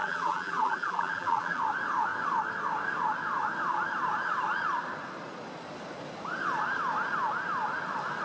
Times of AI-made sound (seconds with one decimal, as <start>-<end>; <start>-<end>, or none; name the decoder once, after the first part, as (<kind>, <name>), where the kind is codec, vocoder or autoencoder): 0.0-1.6 (vocoder, BigVGAN v2)